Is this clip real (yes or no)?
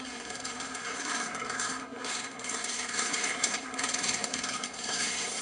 no